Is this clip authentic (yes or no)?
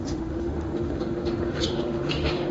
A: no